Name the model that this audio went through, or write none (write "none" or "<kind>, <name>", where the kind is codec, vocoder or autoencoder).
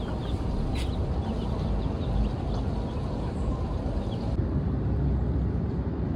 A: none